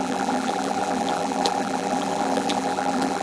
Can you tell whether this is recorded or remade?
remade